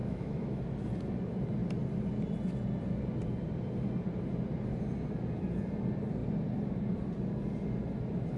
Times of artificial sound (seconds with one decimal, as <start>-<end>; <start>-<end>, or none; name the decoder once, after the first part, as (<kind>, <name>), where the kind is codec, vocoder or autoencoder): 0.0-0.6 (autoencoder, DAC-VAE)